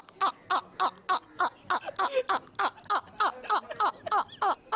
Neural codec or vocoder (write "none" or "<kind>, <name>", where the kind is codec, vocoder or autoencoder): none